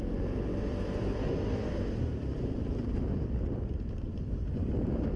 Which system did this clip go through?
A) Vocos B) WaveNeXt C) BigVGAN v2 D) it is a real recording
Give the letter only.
C